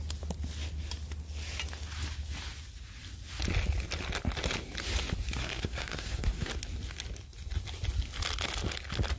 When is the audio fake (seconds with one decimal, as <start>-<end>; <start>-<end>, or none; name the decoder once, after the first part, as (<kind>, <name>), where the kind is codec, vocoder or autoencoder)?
5.4-6.5 (codec, SNAC)